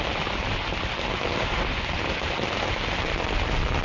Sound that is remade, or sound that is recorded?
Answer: recorded